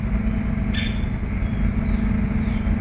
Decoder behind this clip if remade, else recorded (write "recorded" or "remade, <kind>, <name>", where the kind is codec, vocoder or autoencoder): recorded